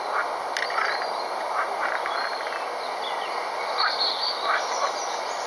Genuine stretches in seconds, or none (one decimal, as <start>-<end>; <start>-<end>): 0.0-5.5